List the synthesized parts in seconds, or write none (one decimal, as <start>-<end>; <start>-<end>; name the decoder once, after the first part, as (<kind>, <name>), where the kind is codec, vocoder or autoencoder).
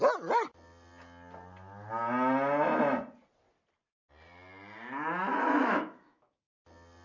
5.3-6.5 (autoencoder, DAC-VAE)